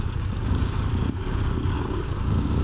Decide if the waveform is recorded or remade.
remade